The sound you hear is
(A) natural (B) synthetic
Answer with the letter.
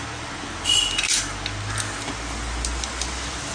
A